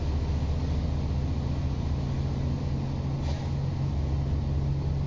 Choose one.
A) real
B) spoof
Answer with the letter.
A